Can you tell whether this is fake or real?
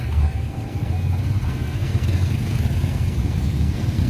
fake